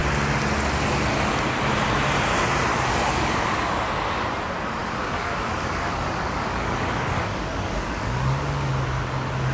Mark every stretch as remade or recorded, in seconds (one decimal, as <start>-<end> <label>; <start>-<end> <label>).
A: 0.0-2.7 recorded; 2.7-3.3 remade; 3.3-4.8 recorded; 4.8-8.7 remade; 8.7-9.5 recorded